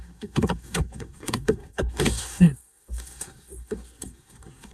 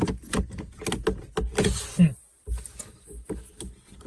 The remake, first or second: first